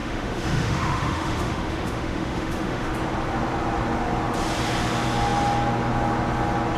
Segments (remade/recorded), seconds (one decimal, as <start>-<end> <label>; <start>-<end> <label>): 0.0-2.9 remade; 2.9-6.8 recorded